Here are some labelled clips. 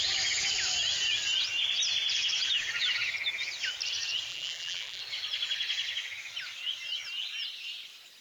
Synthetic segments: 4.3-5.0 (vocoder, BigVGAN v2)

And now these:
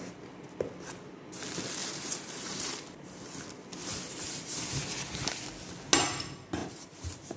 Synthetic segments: 1.8-3.1 (vocoder, BigVGAN v2); 3.8-4.8; 6.6-7.4

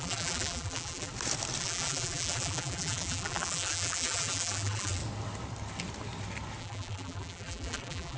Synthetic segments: 0.0-1.1 (vocoder, BigVGAN v2); 1.6-5.0; 6.6-8.2

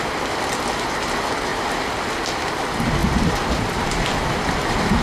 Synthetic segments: 3.0-4.6 (vocoder, BigVGAN v2)

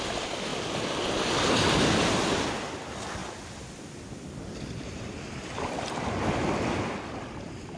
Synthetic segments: none

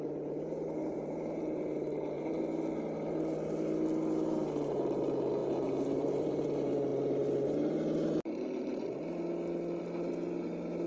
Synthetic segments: 0.8-2.3 (vocoder, BigVGAN v2); 5.4-6.3

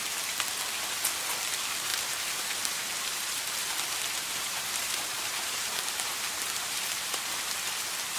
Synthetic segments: 1.9-3.4 (vocoder, BigVGAN v2); 4.3-7.3